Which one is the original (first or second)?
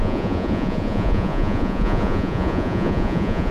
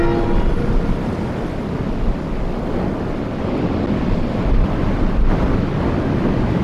second